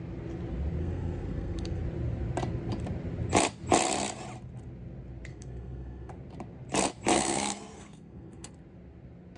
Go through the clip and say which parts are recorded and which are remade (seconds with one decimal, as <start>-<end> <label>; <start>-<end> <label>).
0.0-0.8 recorded; 0.8-1.8 remade; 1.8-5.3 recorded; 5.3-6.1 remade; 6.1-7.1 recorded; 7.1-8.5 remade; 8.5-9.4 recorded